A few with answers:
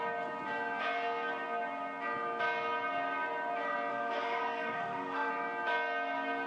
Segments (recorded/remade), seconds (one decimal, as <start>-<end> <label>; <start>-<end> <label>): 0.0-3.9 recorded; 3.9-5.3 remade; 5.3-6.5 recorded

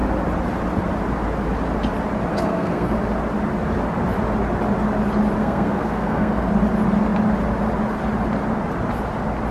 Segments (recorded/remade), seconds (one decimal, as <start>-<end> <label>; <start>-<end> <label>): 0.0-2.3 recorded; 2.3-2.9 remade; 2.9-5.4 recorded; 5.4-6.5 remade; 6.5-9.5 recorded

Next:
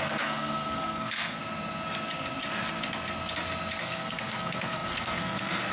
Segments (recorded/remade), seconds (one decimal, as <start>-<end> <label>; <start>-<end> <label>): 0.0-1.4 remade; 1.4-3.8 recorded; 3.8-5.7 remade

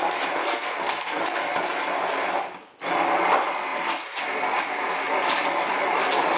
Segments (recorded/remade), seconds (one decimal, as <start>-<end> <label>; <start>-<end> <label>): 0.0-0.4 recorded; 0.4-1.2 remade; 1.2-6.4 recorded